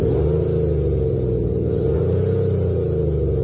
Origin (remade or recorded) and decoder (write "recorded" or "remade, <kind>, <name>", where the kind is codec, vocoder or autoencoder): recorded